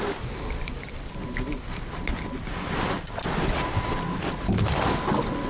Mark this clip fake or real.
real